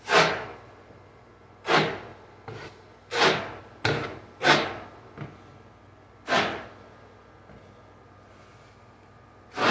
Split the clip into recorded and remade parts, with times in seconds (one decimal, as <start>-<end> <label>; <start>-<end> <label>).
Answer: 0.0-9.7 recorded

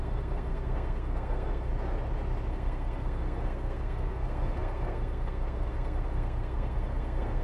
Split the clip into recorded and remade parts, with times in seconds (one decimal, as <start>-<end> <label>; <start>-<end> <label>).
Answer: 0.0-1.7 remade; 1.7-2.5 recorded; 2.5-7.4 remade